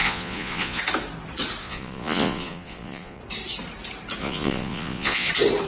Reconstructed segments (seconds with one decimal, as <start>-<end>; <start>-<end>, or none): 0.0-0.8; 1.6-3.2; 4.2-5.3